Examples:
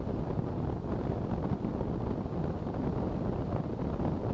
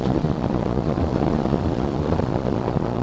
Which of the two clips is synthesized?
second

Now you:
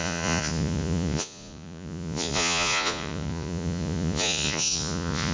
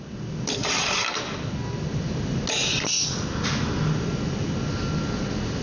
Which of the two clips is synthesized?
first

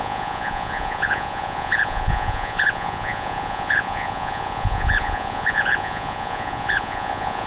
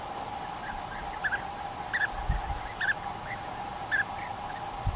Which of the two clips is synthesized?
first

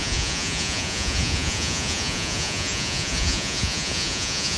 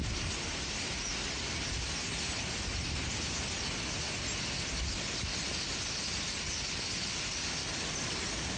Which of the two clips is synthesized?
first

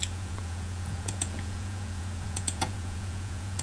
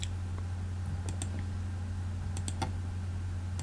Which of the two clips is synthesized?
first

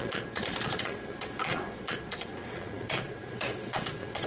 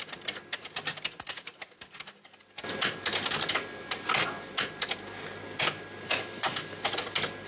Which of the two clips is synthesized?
first